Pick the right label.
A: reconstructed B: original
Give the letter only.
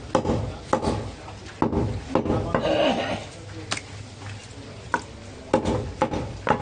B